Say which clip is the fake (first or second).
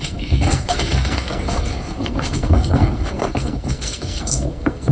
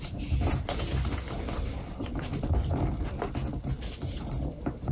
first